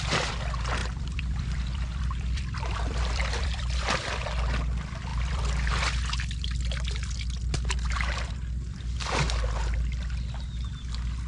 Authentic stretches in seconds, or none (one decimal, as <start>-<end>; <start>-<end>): 0.0-0.8; 4.2-5.1; 5.7-11.3